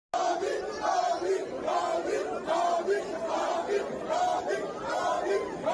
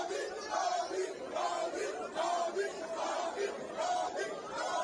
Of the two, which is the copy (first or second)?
second